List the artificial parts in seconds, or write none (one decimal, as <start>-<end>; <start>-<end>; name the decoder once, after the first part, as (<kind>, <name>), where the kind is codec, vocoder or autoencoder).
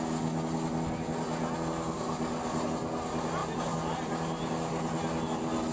none